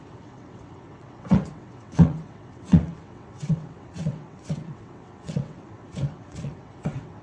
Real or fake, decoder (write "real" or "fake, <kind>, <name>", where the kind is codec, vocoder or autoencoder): fake, vocoder, WaveNeXt